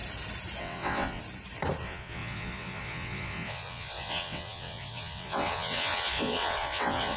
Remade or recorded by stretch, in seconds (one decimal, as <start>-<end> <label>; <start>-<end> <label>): 0.0-0.6 recorded; 0.6-1.2 remade; 1.2-1.8 recorded; 1.8-7.2 remade